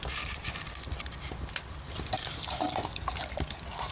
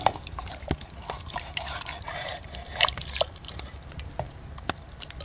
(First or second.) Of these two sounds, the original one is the first